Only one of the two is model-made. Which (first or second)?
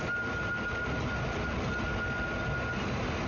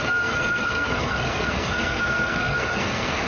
second